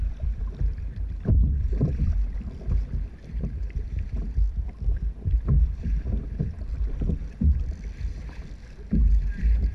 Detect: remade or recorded remade